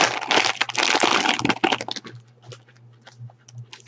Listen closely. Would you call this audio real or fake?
real